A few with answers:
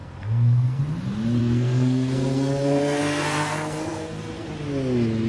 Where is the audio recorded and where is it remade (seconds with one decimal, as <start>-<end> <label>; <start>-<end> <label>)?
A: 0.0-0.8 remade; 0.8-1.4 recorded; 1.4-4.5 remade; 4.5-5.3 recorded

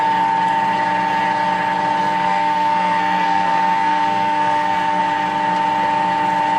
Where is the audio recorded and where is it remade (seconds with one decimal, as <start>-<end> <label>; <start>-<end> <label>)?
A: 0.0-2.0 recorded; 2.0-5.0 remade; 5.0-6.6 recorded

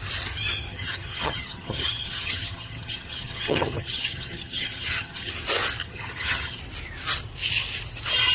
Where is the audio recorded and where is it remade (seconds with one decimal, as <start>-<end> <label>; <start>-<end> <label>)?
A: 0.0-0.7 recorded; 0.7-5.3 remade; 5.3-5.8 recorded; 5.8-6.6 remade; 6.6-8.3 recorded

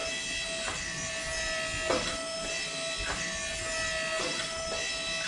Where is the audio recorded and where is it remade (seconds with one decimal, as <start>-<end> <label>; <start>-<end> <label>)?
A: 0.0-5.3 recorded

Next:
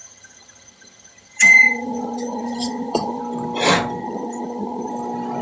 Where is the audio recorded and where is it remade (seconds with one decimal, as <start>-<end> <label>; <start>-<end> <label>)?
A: 0.0-3.2 remade; 3.2-4.0 recorded; 4.0-4.9 remade; 4.9-5.4 recorded